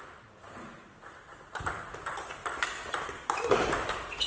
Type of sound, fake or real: real